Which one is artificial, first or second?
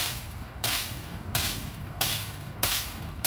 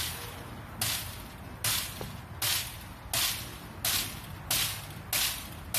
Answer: first